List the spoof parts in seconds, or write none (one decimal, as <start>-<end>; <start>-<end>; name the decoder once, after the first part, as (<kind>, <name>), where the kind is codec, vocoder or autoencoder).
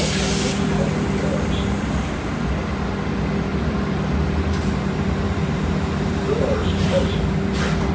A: 3.5-7.3 (vocoder, BigVGAN v2)